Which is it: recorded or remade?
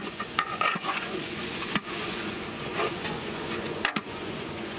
remade